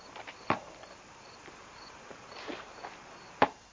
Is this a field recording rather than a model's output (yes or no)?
yes